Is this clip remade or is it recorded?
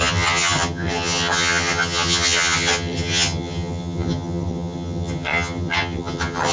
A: remade